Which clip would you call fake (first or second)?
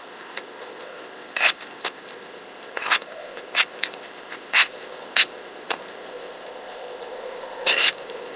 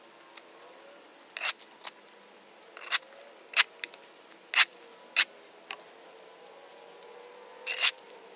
first